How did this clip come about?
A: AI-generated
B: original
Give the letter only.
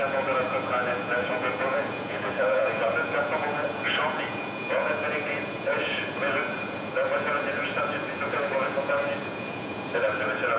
A